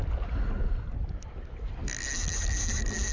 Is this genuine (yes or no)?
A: yes